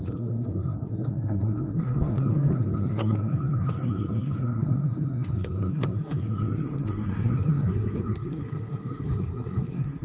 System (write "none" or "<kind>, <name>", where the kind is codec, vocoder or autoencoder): codec, SNAC